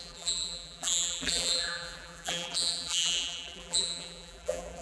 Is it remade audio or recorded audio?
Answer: remade